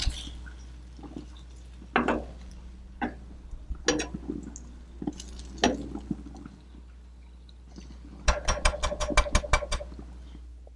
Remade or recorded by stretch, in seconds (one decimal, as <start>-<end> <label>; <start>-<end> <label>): 0.0-10.8 recorded